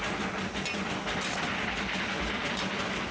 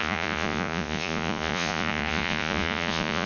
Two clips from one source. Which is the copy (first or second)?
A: second